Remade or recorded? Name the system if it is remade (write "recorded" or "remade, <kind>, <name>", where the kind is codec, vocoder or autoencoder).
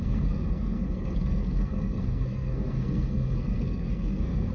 remade, codec, SNAC